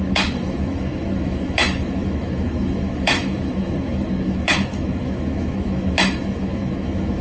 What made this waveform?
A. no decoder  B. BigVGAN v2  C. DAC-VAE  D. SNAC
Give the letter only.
C